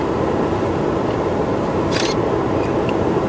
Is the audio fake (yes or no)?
no